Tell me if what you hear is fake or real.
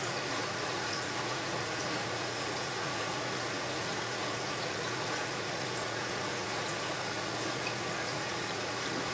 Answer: fake